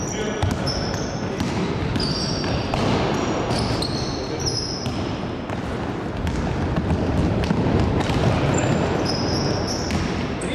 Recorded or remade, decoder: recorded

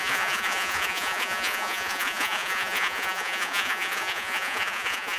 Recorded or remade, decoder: remade, vocoder, Vocos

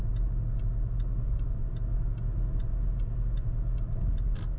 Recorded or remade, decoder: recorded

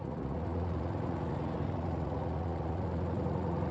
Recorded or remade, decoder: remade, vocoder, Vocos